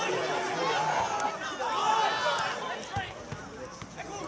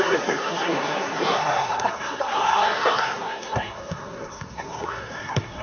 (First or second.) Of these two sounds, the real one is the first